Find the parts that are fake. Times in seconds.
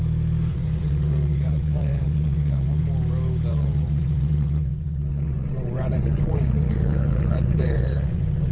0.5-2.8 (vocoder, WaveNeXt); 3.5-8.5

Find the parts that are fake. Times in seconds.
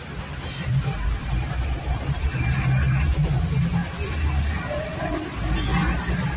0.0-3.8 (vocoder, BigVGAN v2); 4.8-6.4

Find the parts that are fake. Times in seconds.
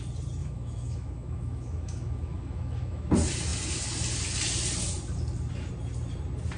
0.4-3.1 (autoencoder, DAC-VAE)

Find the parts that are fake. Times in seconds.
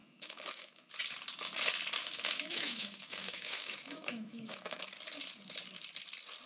0.0-0.9 (autoencoder, DAC-VAE); 2.0-4.8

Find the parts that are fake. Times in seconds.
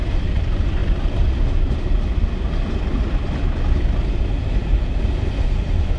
none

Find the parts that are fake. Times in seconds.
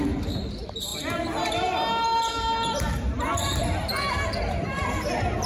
none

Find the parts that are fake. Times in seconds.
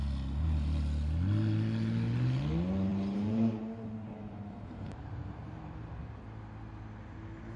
2.9-5.9 (vocoder, BigVGAN v2)